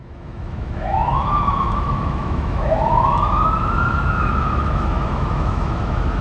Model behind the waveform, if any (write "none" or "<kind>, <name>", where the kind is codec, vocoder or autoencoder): autoencoder, DAC-VAE